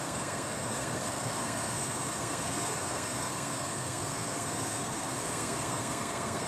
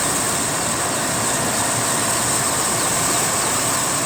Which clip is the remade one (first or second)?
first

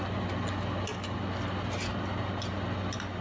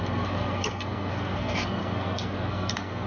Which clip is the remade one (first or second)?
second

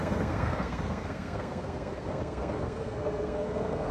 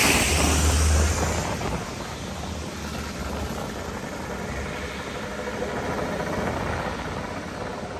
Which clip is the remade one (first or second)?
first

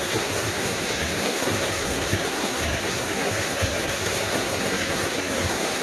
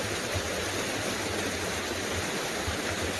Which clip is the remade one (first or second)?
first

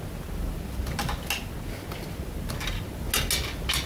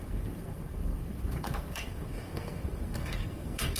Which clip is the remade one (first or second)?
second